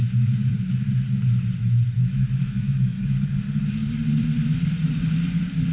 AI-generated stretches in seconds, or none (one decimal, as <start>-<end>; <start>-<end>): 1.6-3.3